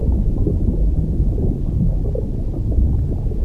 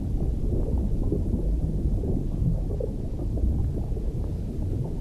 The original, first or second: second